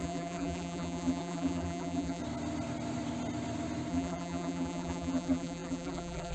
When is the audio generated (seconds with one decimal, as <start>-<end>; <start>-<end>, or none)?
0.0-2.2; 3.9-6.3